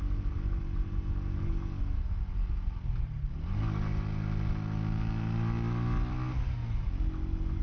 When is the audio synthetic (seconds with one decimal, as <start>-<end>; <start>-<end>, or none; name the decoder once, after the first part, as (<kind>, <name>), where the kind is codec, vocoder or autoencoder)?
none